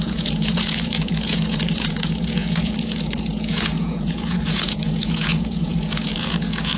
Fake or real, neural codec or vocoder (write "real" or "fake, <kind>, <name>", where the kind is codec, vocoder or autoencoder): fake, vocoder, Vocos